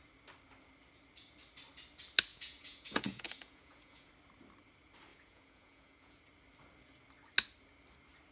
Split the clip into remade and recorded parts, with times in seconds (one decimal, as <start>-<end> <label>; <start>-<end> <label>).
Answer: 0.0-2.3 recorded; 2.3-4.1 remade; 4.1-5.1 recorded; 5.1-6.2 remade; 6.2-8.3 recorded

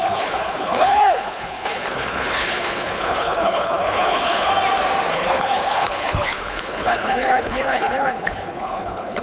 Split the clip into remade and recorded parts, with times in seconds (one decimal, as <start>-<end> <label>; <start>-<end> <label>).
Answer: 0.0-4.5 remade; 4.5-5.1 recorded; 5.1-9.2 remade

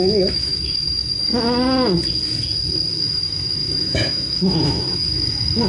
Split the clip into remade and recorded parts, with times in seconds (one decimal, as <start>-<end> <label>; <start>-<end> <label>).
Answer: 0.0-1.3 remade; 1.3-2.9 recorded; 2.9-5.7 remade

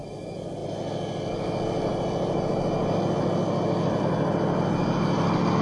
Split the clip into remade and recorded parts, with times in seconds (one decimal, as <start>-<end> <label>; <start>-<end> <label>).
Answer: 0.0-5.6 recorded

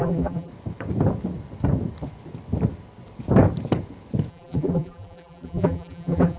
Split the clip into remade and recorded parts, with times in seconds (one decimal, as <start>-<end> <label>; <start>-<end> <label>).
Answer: 0.0-0.5 remade; 0.5-4.3 recorded; 4.3-6.4 remade